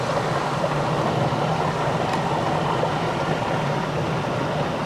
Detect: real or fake real